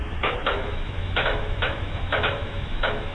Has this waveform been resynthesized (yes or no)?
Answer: yes